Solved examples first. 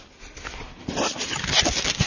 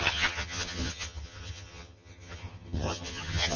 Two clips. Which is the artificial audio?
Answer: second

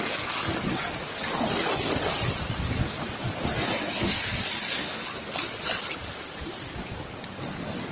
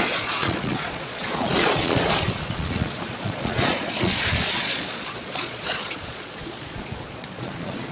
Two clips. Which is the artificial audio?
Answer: second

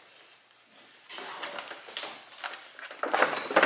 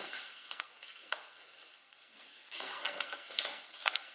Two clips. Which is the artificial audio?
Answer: second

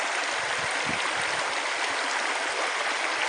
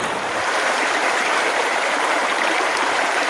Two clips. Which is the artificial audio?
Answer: second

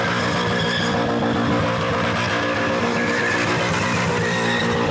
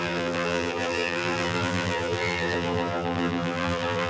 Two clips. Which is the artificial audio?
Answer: second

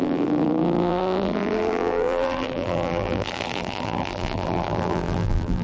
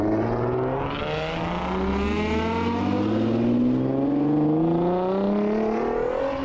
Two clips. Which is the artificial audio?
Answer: first